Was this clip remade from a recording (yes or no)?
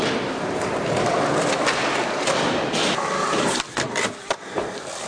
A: no